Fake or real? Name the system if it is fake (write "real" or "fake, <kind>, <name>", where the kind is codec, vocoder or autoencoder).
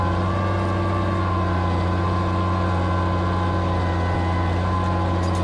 real